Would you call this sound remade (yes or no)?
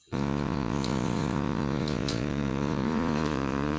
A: yes